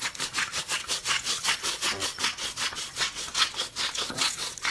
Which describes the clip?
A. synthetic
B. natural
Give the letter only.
A